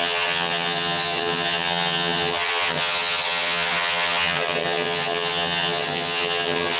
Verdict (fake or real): fake